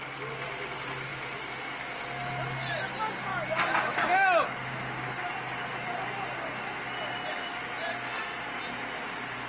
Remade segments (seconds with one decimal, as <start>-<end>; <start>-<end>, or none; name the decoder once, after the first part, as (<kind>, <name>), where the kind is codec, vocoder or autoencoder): 3.3-3.9 (codec, DAC)